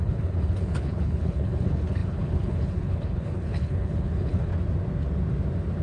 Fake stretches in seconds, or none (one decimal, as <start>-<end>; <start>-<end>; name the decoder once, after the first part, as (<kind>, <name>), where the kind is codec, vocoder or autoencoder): 0.0-4.5 (codec, HILCodec)